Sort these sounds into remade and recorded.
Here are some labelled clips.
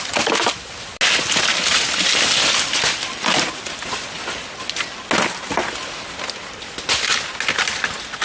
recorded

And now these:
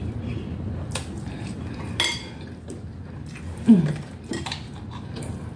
recorded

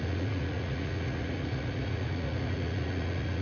remade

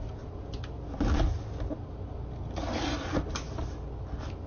recorded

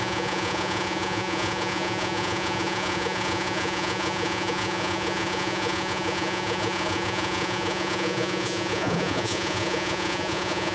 remade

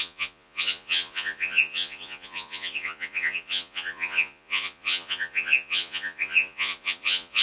remade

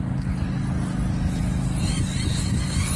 recorded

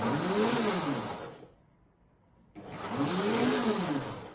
recorded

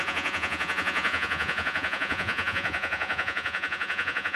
remade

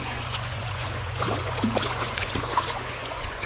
remade